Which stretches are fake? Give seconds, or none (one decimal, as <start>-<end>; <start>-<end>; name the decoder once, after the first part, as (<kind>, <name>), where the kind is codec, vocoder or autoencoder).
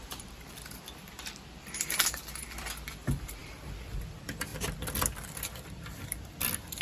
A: 0.0-4.5 (vocoder, BigVGAN v2); 5.3-6.8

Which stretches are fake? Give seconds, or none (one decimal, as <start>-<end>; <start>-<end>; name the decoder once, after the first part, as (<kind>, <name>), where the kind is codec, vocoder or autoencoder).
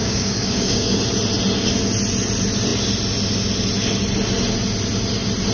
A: 0.0-1.0 (codec, DAC)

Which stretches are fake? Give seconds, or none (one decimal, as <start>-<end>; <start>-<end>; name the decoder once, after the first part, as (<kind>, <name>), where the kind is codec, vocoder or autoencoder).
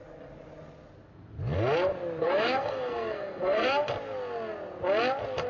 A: 2.2-3.9 (codec, SNAC)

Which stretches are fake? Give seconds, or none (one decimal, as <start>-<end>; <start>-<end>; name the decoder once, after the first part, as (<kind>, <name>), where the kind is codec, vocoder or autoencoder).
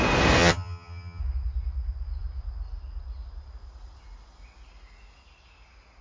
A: 0.4-1.2 (vocoder, HiFi-GAN)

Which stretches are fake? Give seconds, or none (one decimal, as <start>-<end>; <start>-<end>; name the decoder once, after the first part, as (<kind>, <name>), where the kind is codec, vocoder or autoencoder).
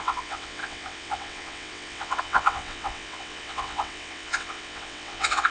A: 0.0-5.5 (vocoder, WaveNeXt)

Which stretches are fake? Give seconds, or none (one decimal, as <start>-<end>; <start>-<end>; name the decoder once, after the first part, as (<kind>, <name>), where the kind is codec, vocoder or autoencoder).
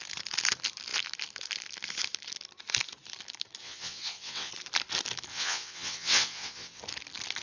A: 3.6-4.5 (vocoder, WaveNeXt); 5.3-6.8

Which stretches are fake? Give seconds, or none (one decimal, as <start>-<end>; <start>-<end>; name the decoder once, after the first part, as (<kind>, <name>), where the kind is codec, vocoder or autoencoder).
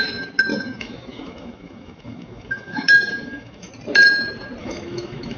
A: 0.5-3.7 (autoencoder, DAC-VAE); 4.6-5.4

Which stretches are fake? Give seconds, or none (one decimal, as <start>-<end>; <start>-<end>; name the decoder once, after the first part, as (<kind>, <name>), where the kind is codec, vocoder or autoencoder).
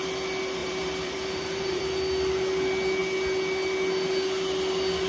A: 0.6-1.8 (vocoder, BigVGAN v2)